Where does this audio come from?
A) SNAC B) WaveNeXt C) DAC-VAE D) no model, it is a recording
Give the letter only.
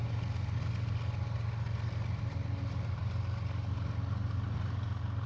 D